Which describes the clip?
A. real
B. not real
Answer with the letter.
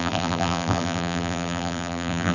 B